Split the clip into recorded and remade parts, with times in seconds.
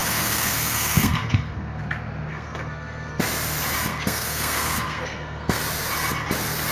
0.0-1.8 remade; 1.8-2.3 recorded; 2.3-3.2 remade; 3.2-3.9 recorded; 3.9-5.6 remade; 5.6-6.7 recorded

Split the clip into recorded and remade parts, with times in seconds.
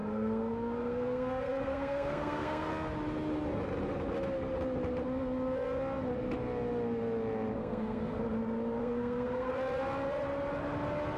0.0-2.7 remade; 2.7-7.6 recorded; 7.6-8.2 remade; 8.2-8.8 recorded; 8.8-9.5 remade; 9.5-11.2 recorded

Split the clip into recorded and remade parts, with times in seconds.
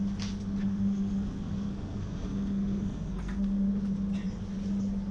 0.0-0.6 recorded; 0.6-3.7 remade; 3.7-5.1 recorded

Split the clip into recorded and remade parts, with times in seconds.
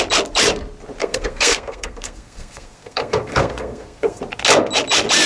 0.0-1.0 recorded; 1.0-4.2 remade; 4.2-5.3 recorded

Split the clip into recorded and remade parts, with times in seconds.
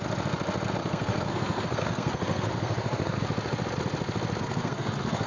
0.0-0.8 recorded; 0.8-3.2 remade; 3.2-4.4 recorded; 4.4-5.3 remade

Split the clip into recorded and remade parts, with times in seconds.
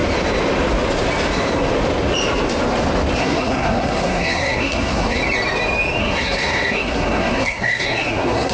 0.0-3.2 recorded; 3.2-5.2 remade; 5.2-6.0 recorded; 6.0-8.5 remade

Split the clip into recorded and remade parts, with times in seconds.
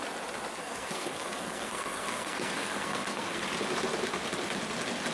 0.0-0.6 recorded; 0.6-3.4 remade; 3.4-5.1 recorded